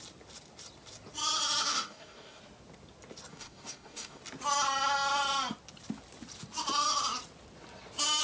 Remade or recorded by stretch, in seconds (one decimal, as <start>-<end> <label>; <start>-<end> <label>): 0.0-1.7 recorded; 1.7-2.4 remade; 2.4-3.3 recorded; 3.3-4.2 remade; 4.2-8.2 recorded